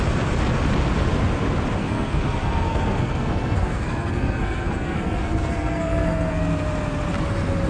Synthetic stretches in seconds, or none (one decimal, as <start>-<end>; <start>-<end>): 1.8-6.4